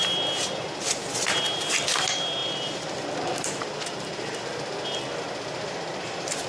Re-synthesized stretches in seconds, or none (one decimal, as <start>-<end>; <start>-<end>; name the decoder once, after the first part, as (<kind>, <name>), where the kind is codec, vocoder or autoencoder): 0.0-6.5 (vocoder, BigVGAN v2)